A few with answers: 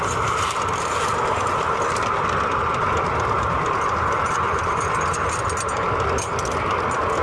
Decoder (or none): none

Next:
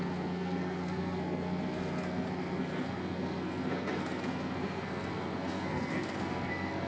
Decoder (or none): codec, SNAC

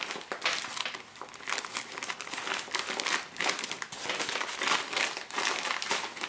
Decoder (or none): none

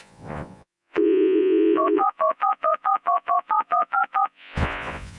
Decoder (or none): vocoder, Vocos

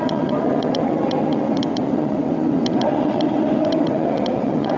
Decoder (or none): vocoder, WaveNeXt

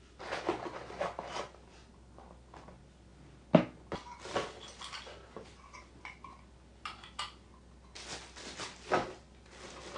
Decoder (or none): none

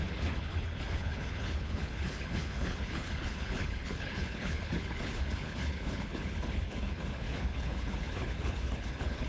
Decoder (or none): codec, HILCodec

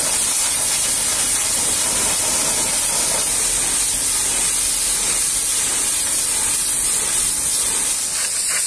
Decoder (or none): none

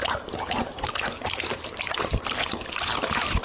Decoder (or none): none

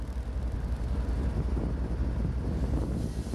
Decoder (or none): none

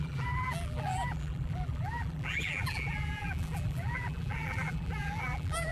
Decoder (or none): vocoder, BigVGAN v2